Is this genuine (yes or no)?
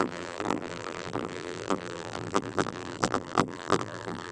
no